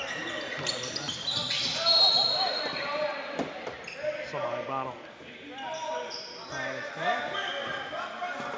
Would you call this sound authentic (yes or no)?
yes